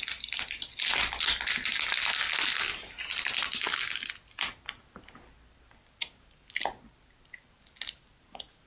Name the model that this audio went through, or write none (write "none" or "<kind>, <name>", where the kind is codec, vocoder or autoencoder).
none